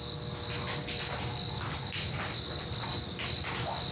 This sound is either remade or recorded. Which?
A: recorded